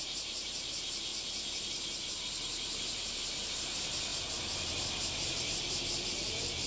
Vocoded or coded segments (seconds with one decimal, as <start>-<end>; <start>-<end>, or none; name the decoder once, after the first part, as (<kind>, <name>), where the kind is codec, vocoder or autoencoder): 0.0-1.1 (vocoder, BigVGAN v2); 2.0-6.7